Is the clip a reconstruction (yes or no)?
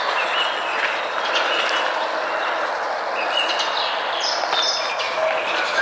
no